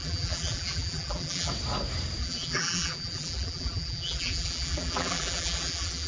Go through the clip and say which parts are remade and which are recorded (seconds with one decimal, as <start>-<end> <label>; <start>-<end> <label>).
0.0-1.5 remade; 1.5-2.2 recorded; 2.2-6.1 remade